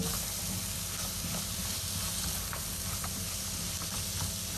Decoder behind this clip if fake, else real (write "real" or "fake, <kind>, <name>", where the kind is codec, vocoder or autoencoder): fake, vocoder, BigVGAN v2